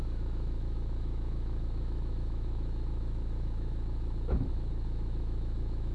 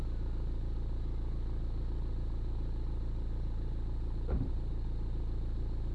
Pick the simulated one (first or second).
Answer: first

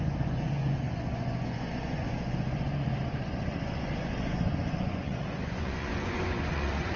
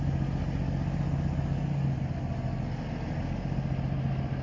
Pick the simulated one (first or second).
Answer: first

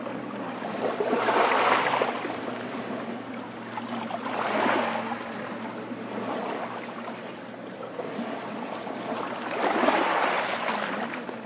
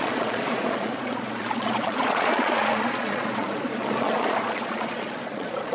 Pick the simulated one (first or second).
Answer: second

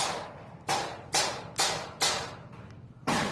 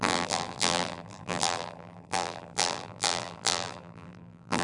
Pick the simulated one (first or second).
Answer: second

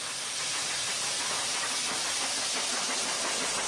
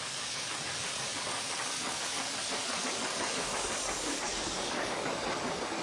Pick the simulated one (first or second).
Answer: second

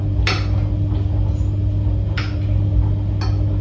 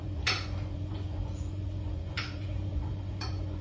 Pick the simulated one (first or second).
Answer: second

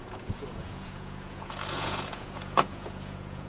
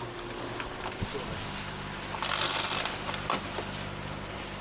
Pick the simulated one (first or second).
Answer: first